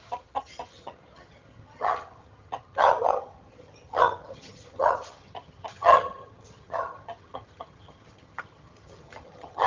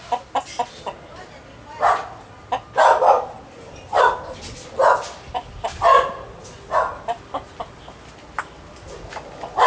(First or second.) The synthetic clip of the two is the first